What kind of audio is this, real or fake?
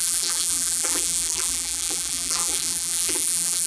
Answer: fake